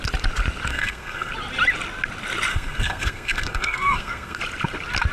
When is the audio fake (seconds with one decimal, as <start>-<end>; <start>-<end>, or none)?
0.7-1.3; 2.5-4.4